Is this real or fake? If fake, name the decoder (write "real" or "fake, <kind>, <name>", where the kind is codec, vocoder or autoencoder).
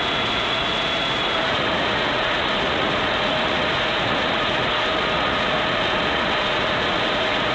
fake, vocoder, Vocos